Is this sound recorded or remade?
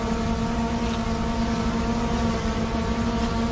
recorded